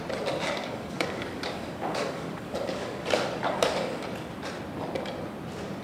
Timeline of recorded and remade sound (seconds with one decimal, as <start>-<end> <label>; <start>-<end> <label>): 0.0-0.6 recorded; 0.6-4.0 remade; 4.0-5.8 recorded